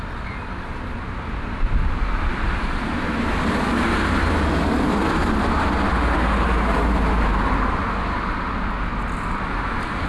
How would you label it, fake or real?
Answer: real